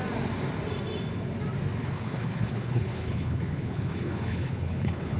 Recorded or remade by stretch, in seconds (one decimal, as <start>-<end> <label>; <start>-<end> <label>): 0.0-1.8 recorded; 1.8-5.2 remade